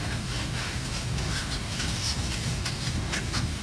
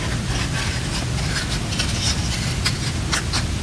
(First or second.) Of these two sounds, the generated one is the first